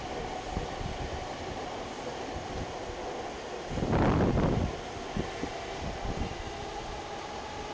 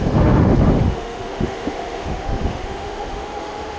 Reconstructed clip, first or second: second